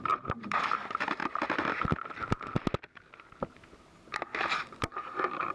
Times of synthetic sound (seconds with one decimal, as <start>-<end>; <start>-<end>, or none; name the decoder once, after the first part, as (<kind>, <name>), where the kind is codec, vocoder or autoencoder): 0.0-1.2 (vocoder, BigVGAN v2); 3.9-5.5

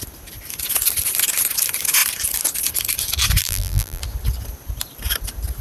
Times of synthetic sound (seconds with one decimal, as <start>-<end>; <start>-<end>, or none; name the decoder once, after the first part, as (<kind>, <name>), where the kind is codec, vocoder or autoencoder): 3.4-4.0 (vocoder, BigVGAN v2)

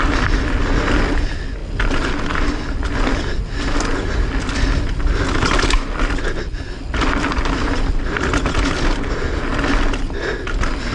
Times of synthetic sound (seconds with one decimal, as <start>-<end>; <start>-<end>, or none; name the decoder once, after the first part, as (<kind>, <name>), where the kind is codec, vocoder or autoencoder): none

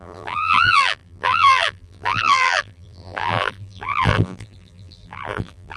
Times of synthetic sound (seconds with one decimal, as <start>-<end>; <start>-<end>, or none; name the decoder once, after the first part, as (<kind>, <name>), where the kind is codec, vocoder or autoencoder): 0.0-5.8 (vocoder, BigVGAN v2)

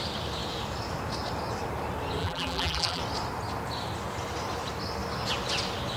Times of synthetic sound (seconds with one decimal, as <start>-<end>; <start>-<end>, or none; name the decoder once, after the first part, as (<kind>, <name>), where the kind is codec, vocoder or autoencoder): 2.2-3.0 (vocoder, BigVGAN v2)

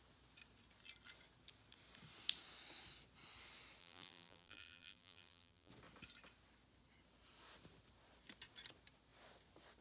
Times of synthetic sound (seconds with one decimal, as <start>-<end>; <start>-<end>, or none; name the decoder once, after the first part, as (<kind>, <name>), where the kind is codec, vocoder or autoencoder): 3.8-5.7 (vocoder, BigVGAN v2)

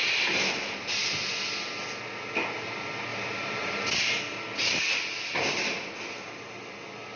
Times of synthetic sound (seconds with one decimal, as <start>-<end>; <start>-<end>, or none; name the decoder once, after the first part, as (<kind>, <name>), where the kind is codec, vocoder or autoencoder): 3.1-3.9 (vocoder, BigVGAN v2)

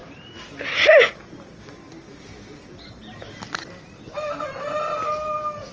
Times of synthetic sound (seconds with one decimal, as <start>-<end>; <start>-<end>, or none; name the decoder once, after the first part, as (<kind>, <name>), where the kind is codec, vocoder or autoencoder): none